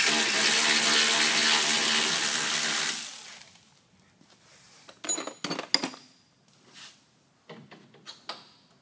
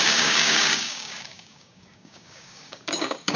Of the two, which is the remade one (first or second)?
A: second